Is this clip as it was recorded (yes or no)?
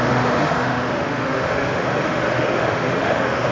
no